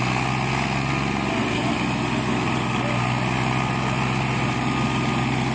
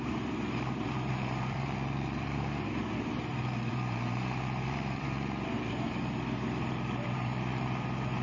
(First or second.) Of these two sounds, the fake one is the second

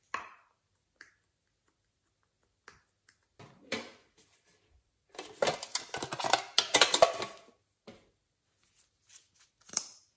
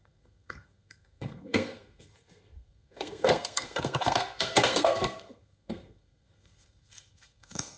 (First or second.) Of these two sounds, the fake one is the second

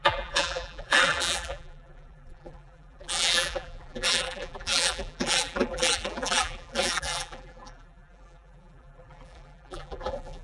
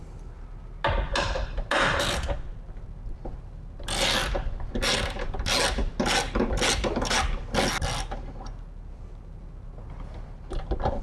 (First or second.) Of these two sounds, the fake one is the first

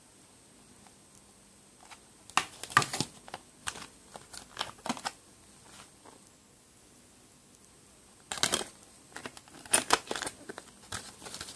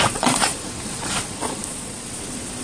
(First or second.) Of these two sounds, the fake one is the second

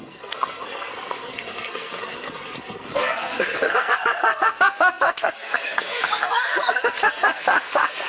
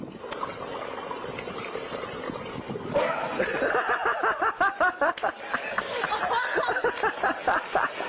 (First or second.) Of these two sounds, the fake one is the first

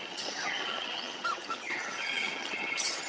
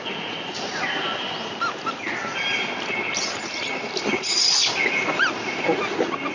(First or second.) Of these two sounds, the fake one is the first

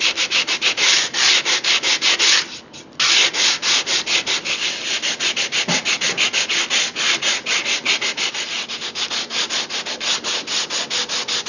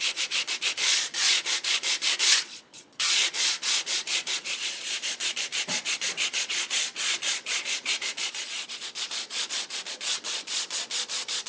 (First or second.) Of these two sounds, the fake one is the second